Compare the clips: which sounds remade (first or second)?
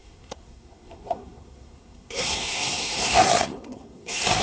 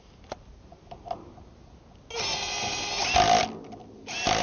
first